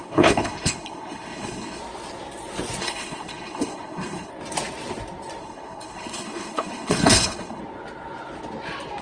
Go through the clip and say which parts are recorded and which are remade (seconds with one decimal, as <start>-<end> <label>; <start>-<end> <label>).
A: 0.0-1.8 remade; 1.8-2.8 recorded; 2.8-4.3 remade; 4.3-5.4 recorded; 5.4-7.6 remade; 7.6-9.0 recorded